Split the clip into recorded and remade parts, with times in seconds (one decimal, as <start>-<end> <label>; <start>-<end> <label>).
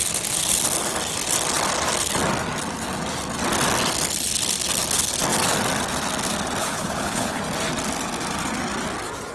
0.0-6.6 recorded; 6.6-7.4 remade; 7.4-9.3 recorded